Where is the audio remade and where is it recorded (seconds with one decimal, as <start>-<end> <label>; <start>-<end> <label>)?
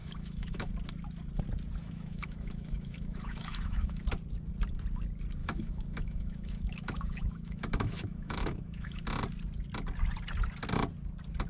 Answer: 0.0-0.7 remade; 0.7-1.8 recorded; 1.8-4.0 remade; 4.0-5.4 recorded; 5.4-9.0 remade; 9.0-11.5 recorded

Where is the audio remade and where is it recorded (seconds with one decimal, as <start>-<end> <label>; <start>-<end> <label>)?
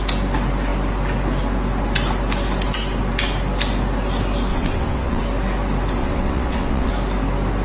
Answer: 0.0-4.5 recorded; 4.5-5.2 remade; 5.2-6.0 recorded; 6.0-6.9 remade; 6.9-7.6 recorded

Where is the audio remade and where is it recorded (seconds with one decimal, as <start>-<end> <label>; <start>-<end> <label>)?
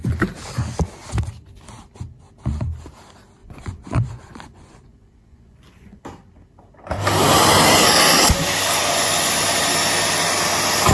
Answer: 0.0-3.4 recorded; 3.4-6.0 remade; 6.0-8.8 recorded; 8.8-9.3 remade; 9.3-10.9 recorded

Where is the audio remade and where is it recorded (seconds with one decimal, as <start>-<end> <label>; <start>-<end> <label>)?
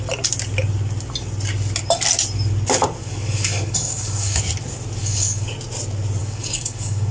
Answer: 0.0-3.0 recorded; 3.0-4.4 remade; 4.4-5.0 recorded; 5.0-5.5 remade; 5.5-6.2 recorded; 6.2-7.1 remade